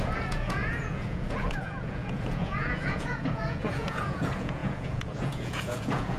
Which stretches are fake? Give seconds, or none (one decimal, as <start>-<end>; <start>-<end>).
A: 0.0-6.2